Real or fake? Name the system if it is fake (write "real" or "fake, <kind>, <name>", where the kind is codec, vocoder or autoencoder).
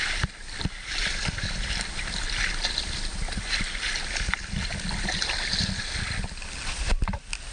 real